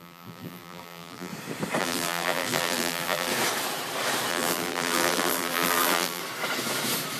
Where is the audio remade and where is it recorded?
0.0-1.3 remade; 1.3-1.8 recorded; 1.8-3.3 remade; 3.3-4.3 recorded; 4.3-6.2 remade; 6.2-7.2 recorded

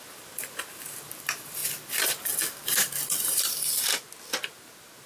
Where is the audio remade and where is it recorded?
0.0-1.6 remade; 1.6-3.2 recorded; 3.2-3.9 remade; 3.9-5.1 recorded

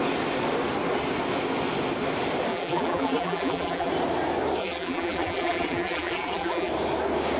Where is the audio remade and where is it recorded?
0.0-2.5 recorded; 2.5-3.9 remade; 3.9-4.6 recorded; 4.6-6.7 remade; 6.7-7.4 recorded

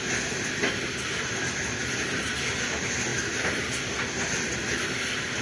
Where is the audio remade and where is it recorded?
0.0-5.4 recorded